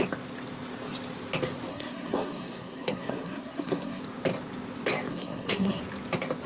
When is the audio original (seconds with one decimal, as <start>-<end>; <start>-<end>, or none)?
0.0-1.7; 4.0-5.1; 5.8-6.5